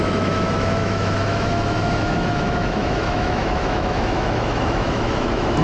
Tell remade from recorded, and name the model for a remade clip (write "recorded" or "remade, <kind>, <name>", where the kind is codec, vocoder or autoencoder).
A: remade, autoencoder, DAC-VAE